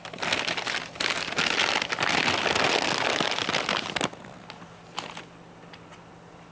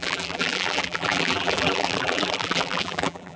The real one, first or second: first